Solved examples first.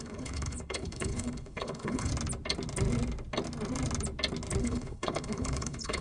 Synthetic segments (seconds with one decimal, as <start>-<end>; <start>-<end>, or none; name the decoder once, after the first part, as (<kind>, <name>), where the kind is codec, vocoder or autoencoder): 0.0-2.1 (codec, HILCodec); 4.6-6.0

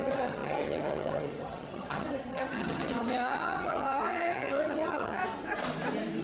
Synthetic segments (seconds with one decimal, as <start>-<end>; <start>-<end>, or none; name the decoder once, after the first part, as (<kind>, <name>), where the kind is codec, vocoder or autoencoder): 0.0-5.2 (vocoder, HiFi-GAN)

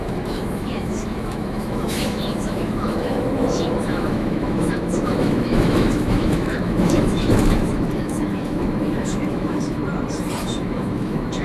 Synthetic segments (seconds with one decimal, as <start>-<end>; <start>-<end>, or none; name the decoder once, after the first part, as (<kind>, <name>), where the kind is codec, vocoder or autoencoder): 0.0-9.8 (autoencoder, DAC-VAE); 10.4-11.4

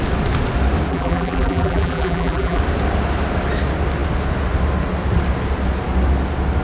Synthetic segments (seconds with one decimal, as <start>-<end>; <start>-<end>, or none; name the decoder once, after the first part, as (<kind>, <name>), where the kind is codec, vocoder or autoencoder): 0.9-2.6 (vocoder, BigVGAN v2)

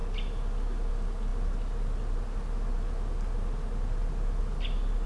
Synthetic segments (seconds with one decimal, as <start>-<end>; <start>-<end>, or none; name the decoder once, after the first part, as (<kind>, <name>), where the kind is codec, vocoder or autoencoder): none

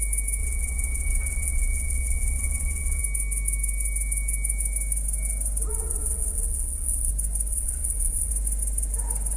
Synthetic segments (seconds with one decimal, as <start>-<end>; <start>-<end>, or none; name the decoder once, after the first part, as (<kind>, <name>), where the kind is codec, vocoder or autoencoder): 0.4-3.0 (vocoder, WaveNeXt); 5.7-7.1; 7.5-8.3

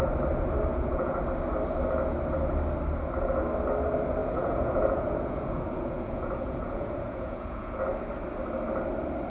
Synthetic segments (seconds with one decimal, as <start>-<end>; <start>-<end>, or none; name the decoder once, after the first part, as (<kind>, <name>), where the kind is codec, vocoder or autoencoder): 0.7-1.2 (vocoder, Vocos); 4.2-7.8